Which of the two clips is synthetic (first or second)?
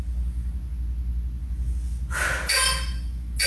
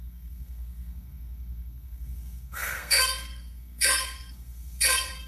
second